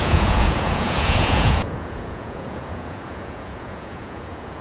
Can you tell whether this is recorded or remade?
remade